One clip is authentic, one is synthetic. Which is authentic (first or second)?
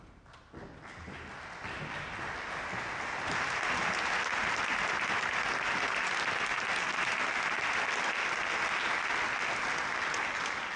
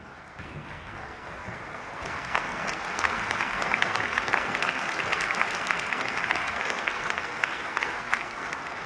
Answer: first